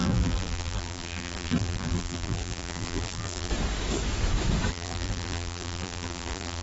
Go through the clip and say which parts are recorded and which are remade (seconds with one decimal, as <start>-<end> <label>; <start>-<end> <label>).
0.0-3.5 remade; 3.5-4.7 recorded; 4.7-6.6 remade